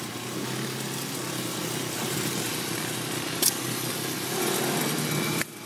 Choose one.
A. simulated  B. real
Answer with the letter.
B